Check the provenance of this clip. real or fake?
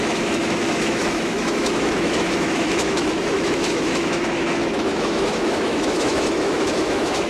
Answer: fake